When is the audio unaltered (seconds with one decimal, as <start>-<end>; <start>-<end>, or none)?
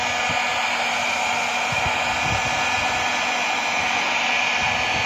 0.0-5.1